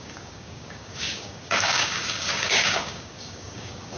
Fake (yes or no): yes